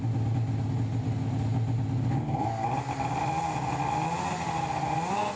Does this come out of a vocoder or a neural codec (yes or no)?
no